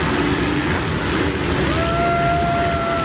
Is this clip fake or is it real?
real